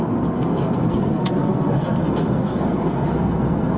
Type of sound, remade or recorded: remade